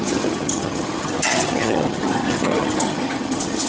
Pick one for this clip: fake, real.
fake